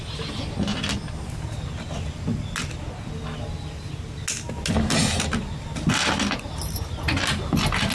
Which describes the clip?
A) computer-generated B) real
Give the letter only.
B